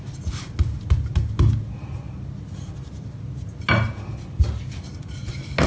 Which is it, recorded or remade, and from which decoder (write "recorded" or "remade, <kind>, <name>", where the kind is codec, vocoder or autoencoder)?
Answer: recorded